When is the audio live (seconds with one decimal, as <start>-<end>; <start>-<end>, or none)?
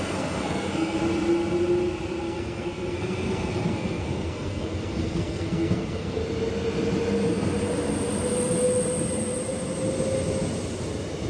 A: 1.0-2.2; 6.2-11.3